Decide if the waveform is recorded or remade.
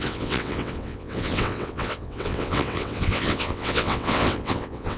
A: remade